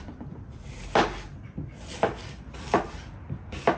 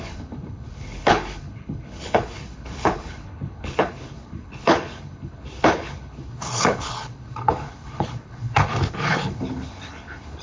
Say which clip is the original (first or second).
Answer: first